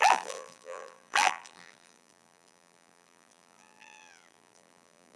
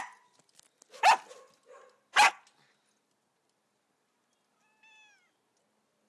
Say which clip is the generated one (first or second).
first